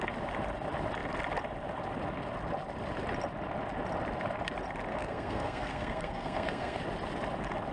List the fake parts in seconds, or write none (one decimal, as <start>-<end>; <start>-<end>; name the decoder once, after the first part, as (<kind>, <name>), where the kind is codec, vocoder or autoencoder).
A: 4.9-6.8 (codec, SNAC)